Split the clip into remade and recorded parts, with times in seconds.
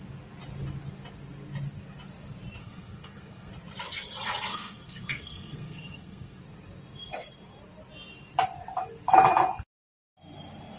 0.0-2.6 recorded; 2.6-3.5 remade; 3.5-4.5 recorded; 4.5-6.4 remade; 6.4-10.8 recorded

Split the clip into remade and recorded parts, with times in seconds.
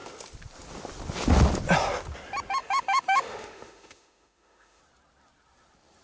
0.0-2.6 recorded; 2.6-4.8 remade; 4.8-6.0 recorded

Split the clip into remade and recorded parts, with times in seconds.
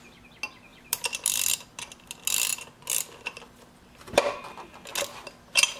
0.0-0.7 recorded; 0.7-1.5 remade; 1.5-2.5 recorded; 2.5-4.5 remade; 4.5-5.8 recorded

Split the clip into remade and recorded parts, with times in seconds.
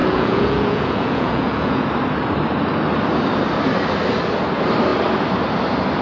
0.0-1.8 remade; 1.8-6.0 recorded